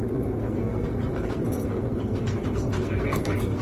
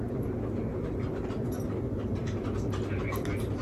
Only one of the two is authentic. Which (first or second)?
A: second